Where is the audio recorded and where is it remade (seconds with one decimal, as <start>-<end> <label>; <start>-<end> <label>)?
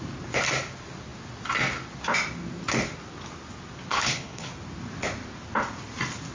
0.0-3.9 recorded; 3.9-4.5 remade; 4.5-6.3 recorded